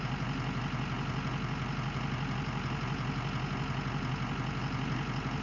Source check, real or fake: real